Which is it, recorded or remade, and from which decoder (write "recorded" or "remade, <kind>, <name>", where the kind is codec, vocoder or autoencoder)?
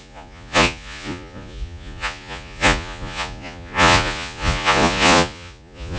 remade, vocoder, Vocos